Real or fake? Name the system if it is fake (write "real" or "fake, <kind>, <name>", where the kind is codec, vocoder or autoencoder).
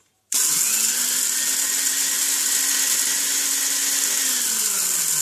real